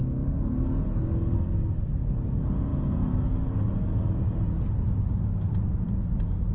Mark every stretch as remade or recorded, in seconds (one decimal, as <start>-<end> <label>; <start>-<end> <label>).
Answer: 0.0-6.5 recorded